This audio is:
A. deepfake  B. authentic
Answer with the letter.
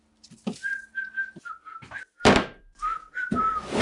A